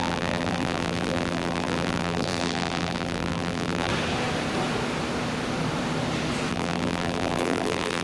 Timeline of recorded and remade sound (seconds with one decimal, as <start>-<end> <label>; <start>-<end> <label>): 0.0-3.9 remade; 3.9-6.5 recorded; 6.5-8.0 remade